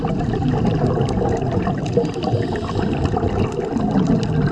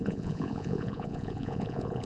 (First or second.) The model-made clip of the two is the second